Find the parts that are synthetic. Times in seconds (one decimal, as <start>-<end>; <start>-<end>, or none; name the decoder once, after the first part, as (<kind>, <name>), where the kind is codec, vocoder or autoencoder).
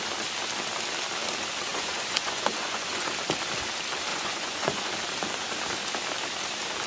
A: 1.7-3.1 (vocoder, Vocos); 4.1-4.9